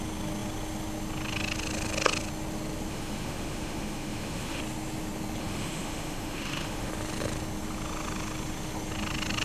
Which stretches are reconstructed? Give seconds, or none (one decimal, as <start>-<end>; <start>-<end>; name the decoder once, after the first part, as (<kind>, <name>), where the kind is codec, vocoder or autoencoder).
2.9-4.6 (autoencoder, DAC-VAE); 5.4-6.9